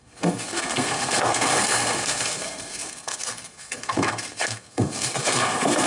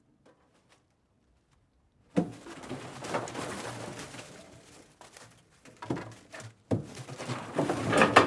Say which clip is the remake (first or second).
first